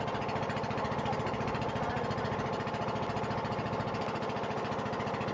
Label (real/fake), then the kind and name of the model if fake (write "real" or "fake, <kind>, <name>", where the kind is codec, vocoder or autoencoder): real